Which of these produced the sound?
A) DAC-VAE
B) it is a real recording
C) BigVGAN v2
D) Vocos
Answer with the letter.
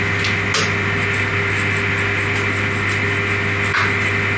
B